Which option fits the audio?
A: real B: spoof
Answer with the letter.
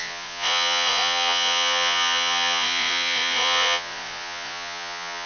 B